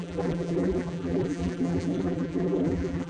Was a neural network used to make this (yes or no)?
yes